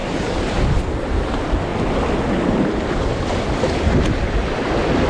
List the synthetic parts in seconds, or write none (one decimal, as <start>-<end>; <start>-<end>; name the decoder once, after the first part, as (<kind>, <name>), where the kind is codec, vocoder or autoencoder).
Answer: none